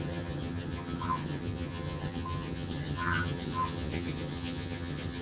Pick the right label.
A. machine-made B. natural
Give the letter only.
A